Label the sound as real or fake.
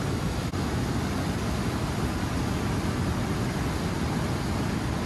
real